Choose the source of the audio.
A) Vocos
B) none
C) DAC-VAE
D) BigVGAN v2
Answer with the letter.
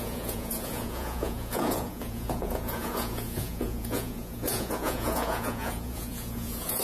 A